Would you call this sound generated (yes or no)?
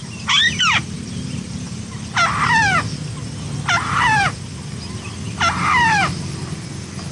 no